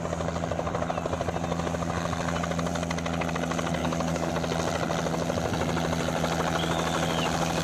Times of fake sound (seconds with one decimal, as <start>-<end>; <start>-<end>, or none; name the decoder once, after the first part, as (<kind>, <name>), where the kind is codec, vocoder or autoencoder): 3.8-4.3 (codec, DAC)